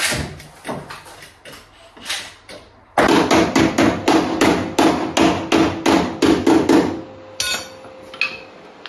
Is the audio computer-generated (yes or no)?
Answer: no